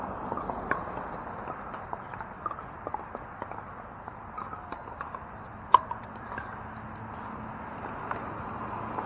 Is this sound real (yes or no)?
yes